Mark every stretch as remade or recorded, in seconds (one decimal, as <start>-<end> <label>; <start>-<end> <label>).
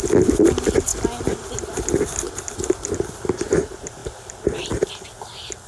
0.0-5.7 recorded